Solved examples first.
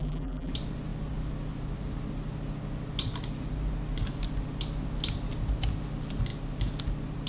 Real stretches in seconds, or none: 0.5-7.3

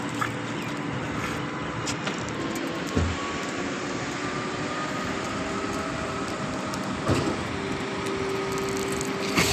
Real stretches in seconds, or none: 0.0-3.8; 6.8-9.5

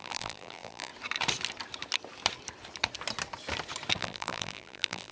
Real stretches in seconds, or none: 0.9-4.0

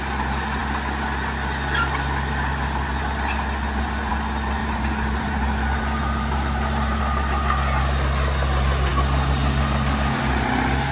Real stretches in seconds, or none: 0.0-4.6; 7.0-10.9

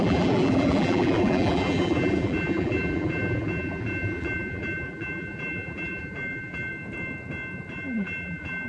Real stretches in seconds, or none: 6.7-7.7

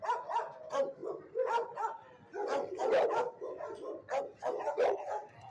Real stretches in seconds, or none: 0.0-5.5